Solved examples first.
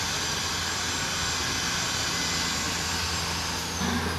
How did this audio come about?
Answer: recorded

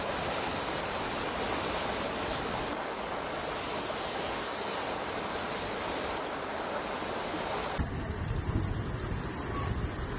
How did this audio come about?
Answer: recorded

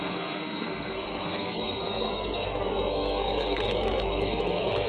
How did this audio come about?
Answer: remade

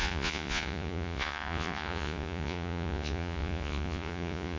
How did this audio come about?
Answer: remade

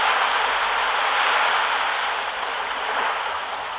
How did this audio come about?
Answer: recorded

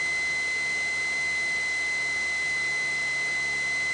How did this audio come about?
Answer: recorded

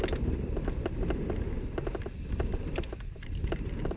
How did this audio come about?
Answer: recorded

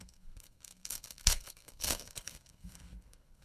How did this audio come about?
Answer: remade